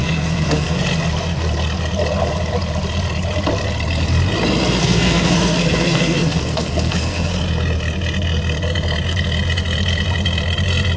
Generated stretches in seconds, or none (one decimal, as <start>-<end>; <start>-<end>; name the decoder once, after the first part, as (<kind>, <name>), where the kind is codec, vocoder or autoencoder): 0.0-0.8 (codec, SNAC); 4.8-7.4